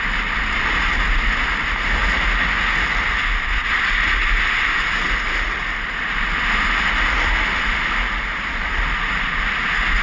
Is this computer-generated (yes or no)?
no